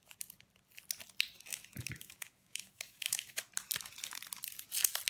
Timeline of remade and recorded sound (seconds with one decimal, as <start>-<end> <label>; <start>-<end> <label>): 0.0-1.5 recorded; 1.5-3.5 remade; 3.5-5.1 recorded